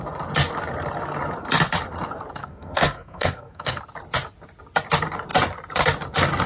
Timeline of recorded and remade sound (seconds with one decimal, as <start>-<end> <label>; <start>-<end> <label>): 0.0-2.4 recorded; 2.4-3.8 remade; 3.8-6.5 recorded